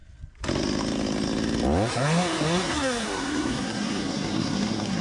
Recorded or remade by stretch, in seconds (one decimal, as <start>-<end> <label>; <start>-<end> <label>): 0.0-1.9 recorded; 1.9-5.0 remade